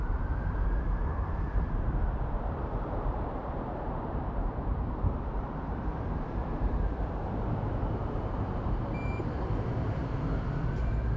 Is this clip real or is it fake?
fake